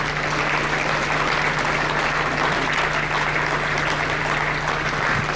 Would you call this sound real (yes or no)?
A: yes